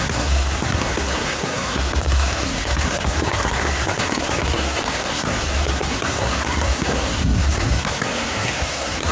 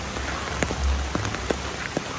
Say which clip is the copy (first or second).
first